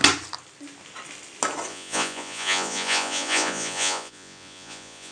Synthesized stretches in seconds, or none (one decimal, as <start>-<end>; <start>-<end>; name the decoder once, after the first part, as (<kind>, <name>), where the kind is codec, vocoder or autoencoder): 1.7-5.1 (vocoder, Vocos)